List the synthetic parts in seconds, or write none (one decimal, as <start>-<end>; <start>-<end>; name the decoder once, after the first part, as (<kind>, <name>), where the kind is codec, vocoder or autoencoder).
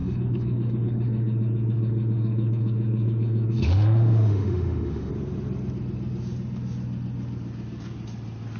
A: 0.0-5.1 (autoencoder, DAC-VAE)